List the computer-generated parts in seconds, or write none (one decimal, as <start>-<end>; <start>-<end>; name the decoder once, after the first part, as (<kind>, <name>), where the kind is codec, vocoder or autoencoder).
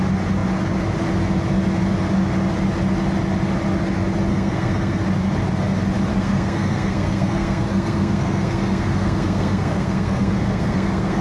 4.3-5.0 (codec, SNAC); 6.1-11.2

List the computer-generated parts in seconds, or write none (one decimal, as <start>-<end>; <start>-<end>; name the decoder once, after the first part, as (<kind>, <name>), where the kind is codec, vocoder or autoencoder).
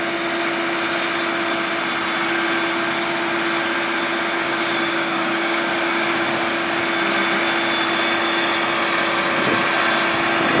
4.4-6.8 (codec, DAC)